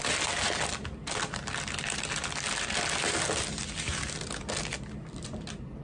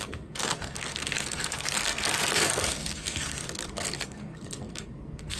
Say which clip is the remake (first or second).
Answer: second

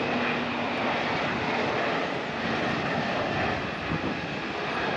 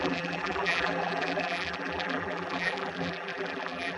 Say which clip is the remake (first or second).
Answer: second